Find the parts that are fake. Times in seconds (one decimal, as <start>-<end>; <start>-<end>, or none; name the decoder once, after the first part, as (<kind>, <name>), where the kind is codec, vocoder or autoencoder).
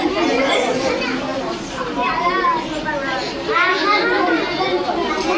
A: none